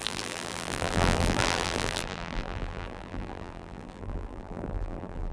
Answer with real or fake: fake